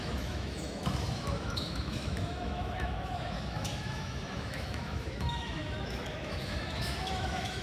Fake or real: fake